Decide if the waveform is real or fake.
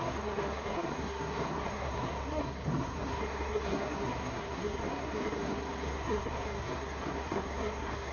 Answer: fake